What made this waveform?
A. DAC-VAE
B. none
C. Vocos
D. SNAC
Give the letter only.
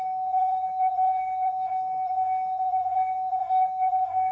D